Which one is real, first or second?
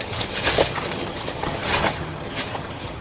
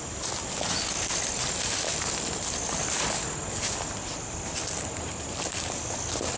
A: second